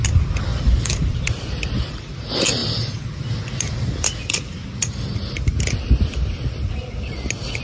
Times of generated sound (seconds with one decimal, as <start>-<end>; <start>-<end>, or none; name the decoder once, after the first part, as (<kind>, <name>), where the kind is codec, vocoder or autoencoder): 0.5-1.2 (vocoder, BigVGAN v2)